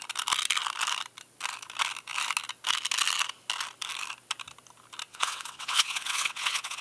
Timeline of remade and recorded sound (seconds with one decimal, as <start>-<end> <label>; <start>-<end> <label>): 0.0-5.1 recorded; 5.1-6.8 remade